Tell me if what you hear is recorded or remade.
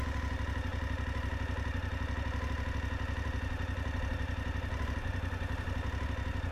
recorded